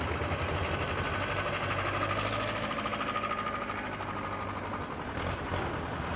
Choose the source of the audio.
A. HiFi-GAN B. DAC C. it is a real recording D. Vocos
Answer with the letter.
C